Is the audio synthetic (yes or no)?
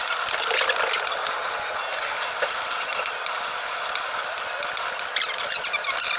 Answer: no